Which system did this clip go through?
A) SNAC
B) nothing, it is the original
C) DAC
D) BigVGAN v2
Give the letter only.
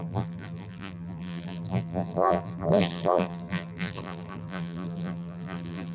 D